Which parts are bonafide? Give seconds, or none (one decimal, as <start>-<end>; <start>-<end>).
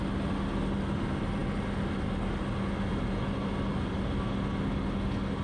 0.0-5.4